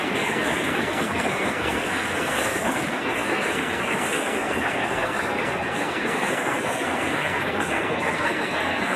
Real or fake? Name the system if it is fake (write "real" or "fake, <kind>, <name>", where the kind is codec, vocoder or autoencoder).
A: fake, codec, SNAC